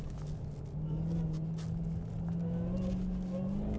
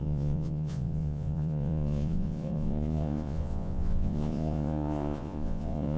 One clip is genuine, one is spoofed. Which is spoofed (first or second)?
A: second